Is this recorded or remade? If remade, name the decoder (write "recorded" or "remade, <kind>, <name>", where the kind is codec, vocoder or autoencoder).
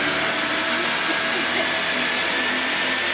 recorded